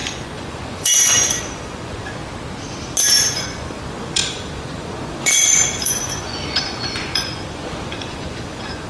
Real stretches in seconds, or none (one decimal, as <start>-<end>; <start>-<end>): 2.2-3.3